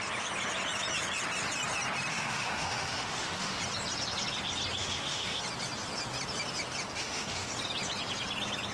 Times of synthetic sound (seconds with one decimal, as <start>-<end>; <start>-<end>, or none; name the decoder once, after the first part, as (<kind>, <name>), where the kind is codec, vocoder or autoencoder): 2.1-3.6 (autoencoder, DAC-VAE); 4.8-5.4; 7.0-7.5

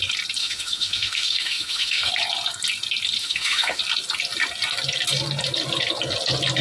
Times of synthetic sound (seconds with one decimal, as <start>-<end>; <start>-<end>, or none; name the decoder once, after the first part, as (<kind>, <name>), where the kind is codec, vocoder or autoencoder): 0.4-2.1 (autoencoder, DAC-VAE); 3.2-3.8